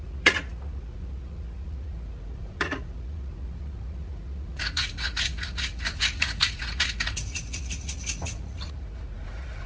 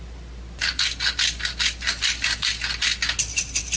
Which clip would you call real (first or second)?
second